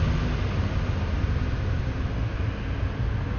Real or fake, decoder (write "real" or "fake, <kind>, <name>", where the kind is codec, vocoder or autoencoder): real